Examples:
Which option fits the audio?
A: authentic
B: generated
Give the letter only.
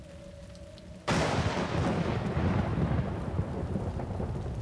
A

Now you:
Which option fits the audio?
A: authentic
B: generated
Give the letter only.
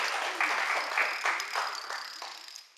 A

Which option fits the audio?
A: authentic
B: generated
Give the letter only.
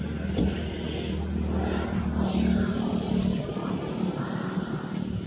A